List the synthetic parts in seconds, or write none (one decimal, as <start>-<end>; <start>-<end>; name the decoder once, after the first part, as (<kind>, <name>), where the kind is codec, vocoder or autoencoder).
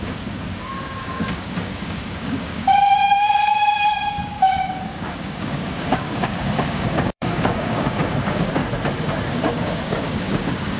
0.0-8.6 (codec, DAC); 9.3-10.8